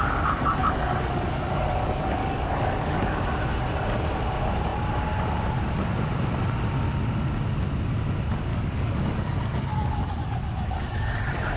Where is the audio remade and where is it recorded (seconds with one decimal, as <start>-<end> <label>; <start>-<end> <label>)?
0.0-0.6 recorded; 0.6-3.3 remade; 3.3-8.5 recorded; 8.5-11.1 remade; 11.1-11.6 recorded